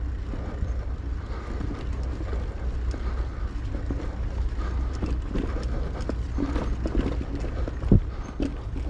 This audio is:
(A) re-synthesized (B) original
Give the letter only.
B